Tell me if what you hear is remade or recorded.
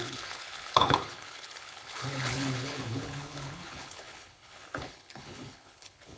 remade